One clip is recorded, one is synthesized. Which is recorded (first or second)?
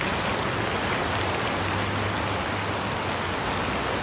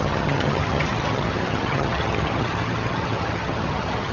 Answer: first